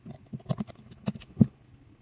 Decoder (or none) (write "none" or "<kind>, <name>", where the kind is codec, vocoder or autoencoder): none